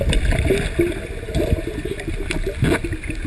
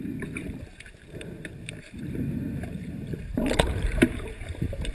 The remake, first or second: second